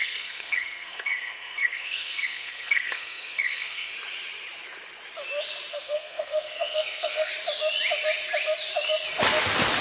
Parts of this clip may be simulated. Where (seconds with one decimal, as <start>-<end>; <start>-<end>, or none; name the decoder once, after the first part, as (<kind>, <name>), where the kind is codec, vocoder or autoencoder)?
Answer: 0.0-3.9 (codec, SNAC); 5.7-7.3